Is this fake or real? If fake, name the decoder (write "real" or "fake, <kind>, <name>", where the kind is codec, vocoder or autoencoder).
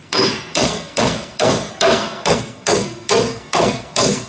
fake, codec, SNAC